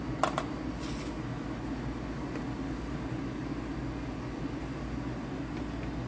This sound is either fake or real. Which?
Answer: real